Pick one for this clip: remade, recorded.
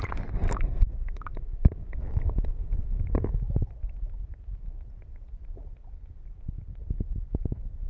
remade